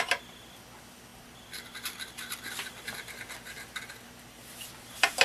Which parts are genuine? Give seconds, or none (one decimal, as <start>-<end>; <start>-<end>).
0.0-5.2